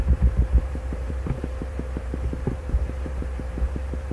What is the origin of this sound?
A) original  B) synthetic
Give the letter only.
B